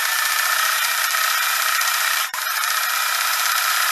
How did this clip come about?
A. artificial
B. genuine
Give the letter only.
A